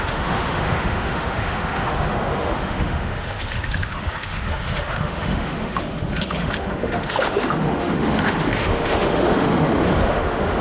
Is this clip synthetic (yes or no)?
yes